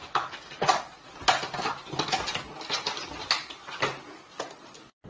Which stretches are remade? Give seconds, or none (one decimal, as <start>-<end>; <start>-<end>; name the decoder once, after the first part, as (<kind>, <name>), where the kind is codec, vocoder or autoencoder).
none